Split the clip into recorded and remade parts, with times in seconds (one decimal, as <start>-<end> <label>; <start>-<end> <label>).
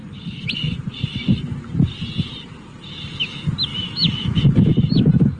0.0-3.7 recorded; 3.7-4.4 remade; 4.4-5.4 recorded